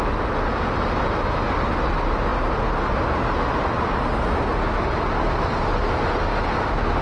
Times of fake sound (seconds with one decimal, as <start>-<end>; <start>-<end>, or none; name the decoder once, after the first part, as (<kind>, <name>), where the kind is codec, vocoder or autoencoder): none